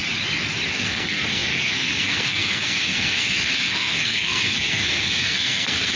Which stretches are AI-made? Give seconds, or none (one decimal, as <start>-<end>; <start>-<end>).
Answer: 0.7-6.0